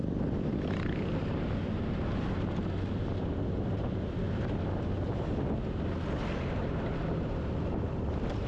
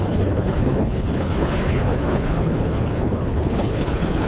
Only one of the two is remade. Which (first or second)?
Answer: second